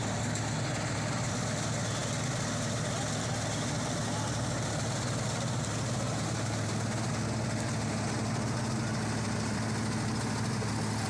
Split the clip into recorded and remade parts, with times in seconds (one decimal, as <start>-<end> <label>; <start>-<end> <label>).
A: 0.0-11.1 recorded